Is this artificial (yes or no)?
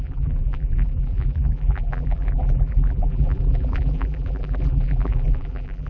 yes